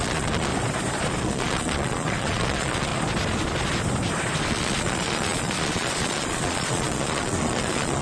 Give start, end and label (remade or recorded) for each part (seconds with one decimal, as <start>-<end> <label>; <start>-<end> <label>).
0.0-0.5 remade; 0.5-1.2 recorded; 1.2-2.9 remade; 2.9-4.5 recorded; 4.5-8.0 remade